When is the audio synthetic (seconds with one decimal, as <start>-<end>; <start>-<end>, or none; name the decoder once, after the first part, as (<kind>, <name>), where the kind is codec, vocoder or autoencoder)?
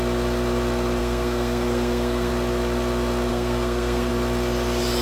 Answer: 1.0-2.3 (codec, SNAC); 3.3-4.1